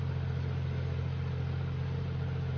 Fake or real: real